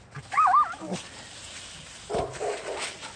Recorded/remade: recorded